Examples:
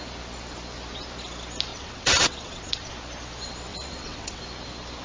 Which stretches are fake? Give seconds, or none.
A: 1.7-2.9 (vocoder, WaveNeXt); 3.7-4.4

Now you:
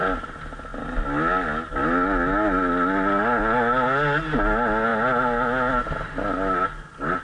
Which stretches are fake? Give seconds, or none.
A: none

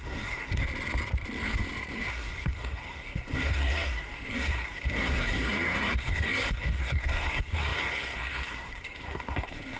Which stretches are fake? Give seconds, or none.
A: 0.0-0.6 (codec, SNAC); 2.1-9.8